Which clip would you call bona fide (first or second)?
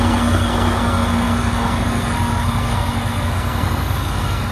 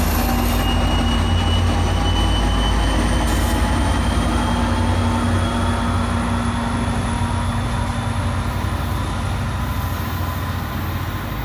second